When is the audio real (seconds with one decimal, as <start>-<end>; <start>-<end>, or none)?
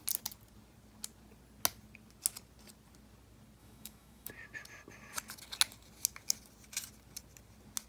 0.0-3.6; 4.3-7.9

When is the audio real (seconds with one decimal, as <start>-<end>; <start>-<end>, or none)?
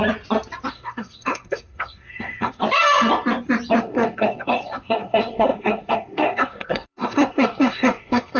0.0-0.7; 2.6-3.8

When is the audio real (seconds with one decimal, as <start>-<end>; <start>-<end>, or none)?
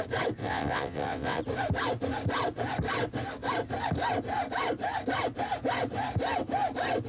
0.0-0.4; 1.4-7.1